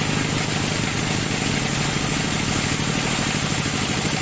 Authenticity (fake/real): real